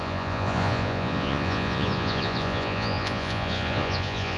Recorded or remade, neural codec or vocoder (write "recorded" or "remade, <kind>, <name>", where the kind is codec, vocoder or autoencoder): remade, vocoder, Vocos